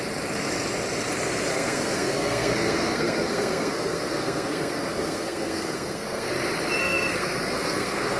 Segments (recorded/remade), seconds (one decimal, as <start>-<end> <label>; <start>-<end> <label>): 0.0-1.5 recorded; 1.5-6.3 remade; 6.3-6.8 recorded; 6.8-8.2 remade